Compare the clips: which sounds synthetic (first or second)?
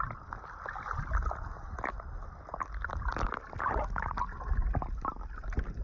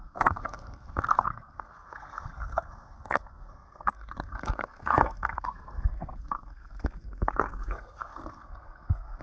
second